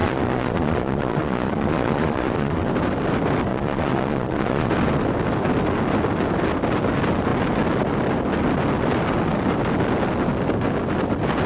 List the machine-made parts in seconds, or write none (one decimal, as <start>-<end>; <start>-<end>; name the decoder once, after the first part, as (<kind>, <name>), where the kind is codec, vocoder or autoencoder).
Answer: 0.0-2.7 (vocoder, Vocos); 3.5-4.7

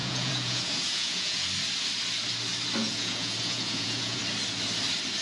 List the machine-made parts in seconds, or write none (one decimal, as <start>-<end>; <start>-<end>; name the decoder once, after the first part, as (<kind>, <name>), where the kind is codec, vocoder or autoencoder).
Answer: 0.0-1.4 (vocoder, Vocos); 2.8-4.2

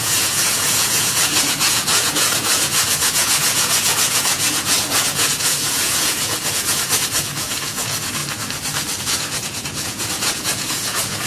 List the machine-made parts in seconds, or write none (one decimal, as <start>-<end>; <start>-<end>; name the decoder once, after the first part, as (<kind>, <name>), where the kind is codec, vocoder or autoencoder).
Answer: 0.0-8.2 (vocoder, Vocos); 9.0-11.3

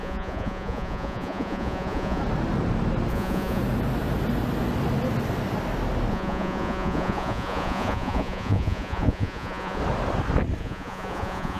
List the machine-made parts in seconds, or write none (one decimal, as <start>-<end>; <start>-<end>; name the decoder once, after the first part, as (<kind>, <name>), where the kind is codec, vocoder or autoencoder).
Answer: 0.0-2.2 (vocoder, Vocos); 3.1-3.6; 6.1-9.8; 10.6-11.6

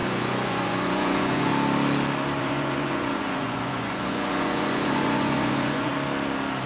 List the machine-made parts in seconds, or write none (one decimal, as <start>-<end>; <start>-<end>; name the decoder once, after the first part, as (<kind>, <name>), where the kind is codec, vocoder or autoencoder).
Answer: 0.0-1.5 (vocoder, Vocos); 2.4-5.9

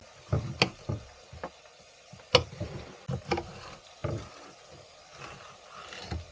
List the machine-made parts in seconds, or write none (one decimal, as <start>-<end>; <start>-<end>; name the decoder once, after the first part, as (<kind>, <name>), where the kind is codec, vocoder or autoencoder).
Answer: none

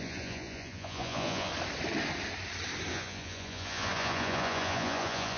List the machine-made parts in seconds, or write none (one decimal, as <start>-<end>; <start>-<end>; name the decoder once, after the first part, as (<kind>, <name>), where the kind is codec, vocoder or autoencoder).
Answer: 0.0-1.5 (vocoder, Vocos); 2.9-5.4